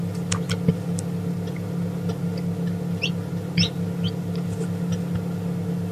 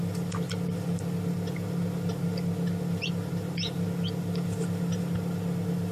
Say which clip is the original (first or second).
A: first